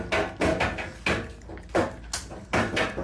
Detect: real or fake real